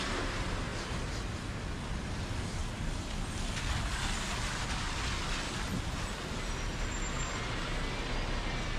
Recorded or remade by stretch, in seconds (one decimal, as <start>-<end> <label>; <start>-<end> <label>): 0.0-8.8 recorded